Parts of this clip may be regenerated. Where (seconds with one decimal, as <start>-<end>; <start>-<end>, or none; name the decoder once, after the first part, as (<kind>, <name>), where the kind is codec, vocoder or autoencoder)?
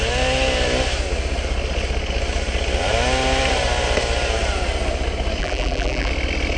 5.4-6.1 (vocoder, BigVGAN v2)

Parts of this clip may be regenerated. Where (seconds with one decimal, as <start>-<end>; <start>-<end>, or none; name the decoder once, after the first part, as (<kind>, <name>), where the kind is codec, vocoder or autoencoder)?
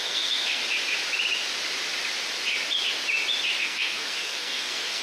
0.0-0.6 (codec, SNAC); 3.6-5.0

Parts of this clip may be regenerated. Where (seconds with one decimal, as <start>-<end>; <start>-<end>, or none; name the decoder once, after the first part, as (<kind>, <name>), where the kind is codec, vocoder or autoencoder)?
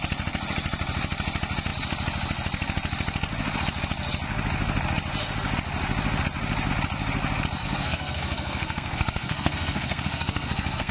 7.6-10.9 (codec, SNAC)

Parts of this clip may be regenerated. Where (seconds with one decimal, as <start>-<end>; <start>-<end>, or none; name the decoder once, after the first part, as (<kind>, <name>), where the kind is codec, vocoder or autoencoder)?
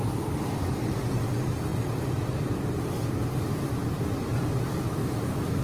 5.0-5.6 (autoencoder, DAC-VAE)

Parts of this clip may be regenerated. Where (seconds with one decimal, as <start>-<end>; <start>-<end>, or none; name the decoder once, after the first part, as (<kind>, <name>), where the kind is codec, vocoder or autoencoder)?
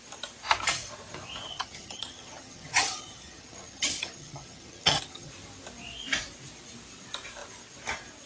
1.5-5.3 (vocoder, HiFi-GAN)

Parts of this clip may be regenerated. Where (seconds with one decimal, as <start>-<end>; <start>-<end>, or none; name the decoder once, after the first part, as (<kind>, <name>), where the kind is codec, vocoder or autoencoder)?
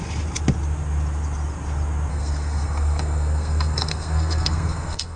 2.1-5.2 (codec, SNAC)